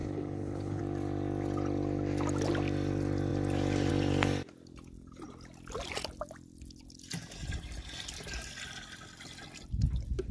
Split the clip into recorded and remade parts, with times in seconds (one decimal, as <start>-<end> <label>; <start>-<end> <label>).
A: 0.0-0.8 remade; 0.8-10.3 recorded